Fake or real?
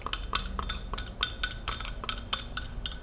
real